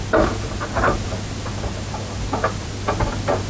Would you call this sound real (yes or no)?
yes